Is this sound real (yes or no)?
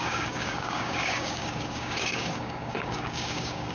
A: no